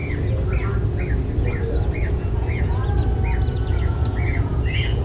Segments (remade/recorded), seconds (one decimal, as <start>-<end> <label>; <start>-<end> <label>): 0.0-2.1 recorded; 2.1-2.8 remade; 2.8-3.5 recorded; 3.5-5.0 remade